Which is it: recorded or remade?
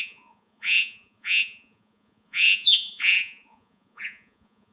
remade